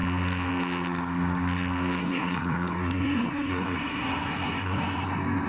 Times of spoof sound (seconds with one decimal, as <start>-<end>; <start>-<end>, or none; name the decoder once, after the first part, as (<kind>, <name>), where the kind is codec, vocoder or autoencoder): 2.0-5.5 (codec, SNAC)